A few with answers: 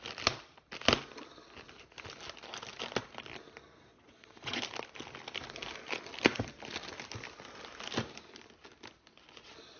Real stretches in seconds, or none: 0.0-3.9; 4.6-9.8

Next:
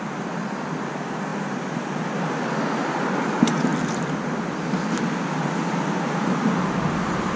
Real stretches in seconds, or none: 0.0-7.4

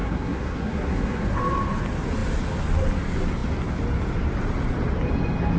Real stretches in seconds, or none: 1.4-5.6

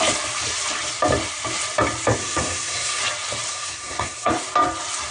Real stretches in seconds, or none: 0.0-2.2; 3.0-3.5; 4.3-5.1

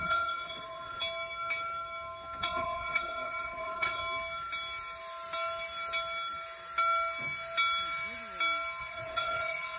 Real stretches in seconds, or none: 1.0-2.4; 4.0-8.8

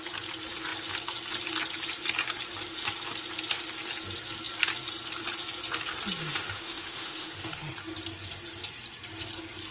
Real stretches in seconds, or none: 0.0-6.2; 7.6-9.7

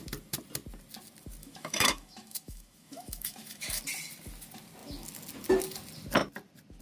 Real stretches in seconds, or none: 0.0-1.4; 3.8-6.8